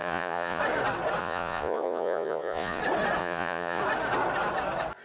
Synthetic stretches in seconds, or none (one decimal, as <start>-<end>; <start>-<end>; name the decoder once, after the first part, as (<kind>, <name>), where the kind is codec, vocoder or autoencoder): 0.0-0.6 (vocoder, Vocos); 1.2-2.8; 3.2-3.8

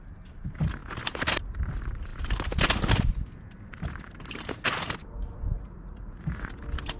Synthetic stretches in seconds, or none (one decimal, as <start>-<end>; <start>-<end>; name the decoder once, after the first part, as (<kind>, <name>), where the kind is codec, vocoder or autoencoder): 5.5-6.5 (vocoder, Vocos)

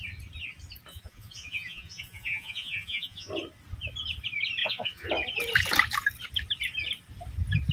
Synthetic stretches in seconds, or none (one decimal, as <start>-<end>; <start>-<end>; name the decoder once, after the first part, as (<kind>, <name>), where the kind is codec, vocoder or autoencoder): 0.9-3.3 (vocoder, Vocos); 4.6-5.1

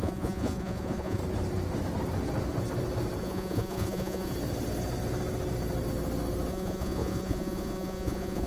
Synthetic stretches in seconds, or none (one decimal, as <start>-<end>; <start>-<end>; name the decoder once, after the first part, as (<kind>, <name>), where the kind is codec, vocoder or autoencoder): 0.0-1.2 (vocoder, Vocos); 3.2-4.3; 6.5-8.5

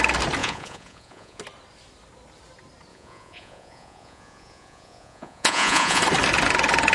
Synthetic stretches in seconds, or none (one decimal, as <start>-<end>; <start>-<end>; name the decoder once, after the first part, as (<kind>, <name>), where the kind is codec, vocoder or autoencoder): 0.4-1.4 (vocoder, Vocos); 2.9-6.0

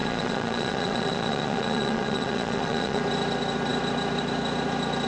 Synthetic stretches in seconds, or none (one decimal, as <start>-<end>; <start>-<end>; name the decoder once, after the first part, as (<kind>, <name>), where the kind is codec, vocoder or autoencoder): 0.0-3.0 (vocoder, Vocos)

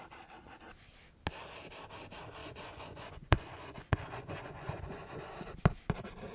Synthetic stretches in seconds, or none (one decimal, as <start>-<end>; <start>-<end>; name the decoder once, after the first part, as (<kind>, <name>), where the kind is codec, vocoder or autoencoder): 2.4-5.3 (vocoder, Vocos)

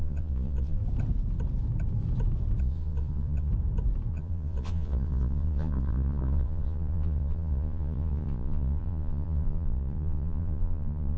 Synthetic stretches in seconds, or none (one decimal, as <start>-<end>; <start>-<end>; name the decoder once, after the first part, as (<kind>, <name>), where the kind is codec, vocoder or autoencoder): 0.0-0.8 (vocoder, Vocos); 2.6-3.5; 4.1-11.2